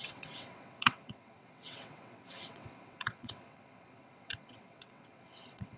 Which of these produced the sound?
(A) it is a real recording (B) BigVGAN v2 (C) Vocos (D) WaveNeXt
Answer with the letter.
D